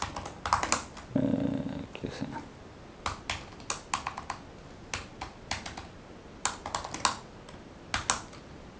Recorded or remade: recorded